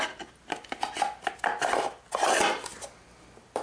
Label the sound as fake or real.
real